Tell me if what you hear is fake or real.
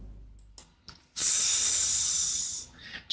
real